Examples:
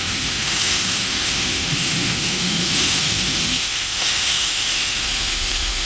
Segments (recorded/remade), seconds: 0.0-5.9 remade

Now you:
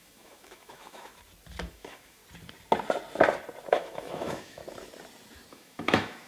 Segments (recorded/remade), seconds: 0.0-1.1 remade; 1.1-1.7 recorded; 1.7-2.2 remade; 2.2-3.7 recorded; 3.7-4.6 remade; 4.6-5.5 recorded; 5.5-6.3 remade

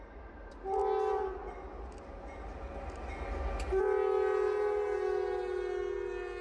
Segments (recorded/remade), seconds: 0.0-6.4 recorded